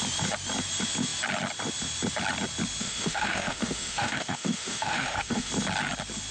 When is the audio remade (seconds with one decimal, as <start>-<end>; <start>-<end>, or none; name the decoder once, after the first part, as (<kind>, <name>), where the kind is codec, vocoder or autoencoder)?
2.8-5.5 (autoencoder, DAC-VAE)